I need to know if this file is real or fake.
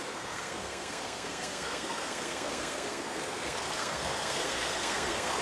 fake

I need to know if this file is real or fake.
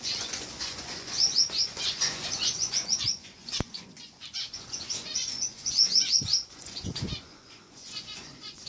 fake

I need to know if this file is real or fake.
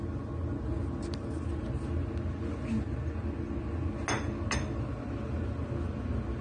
real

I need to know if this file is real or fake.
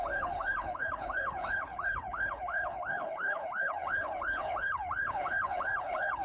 fake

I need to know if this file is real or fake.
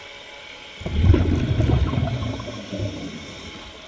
real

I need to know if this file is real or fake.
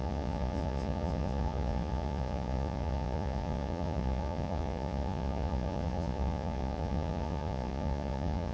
fake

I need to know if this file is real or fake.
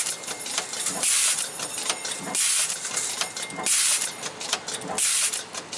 real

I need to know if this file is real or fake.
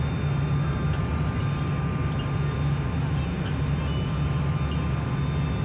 real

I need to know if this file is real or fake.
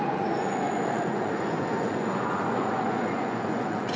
fake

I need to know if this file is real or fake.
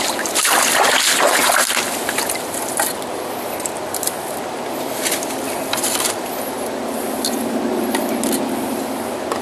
real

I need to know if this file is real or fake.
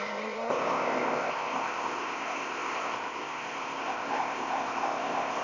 fake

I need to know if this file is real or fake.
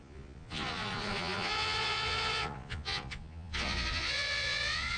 fake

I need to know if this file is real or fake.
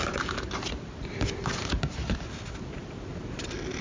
real